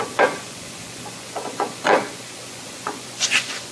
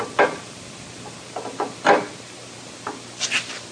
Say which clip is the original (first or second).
second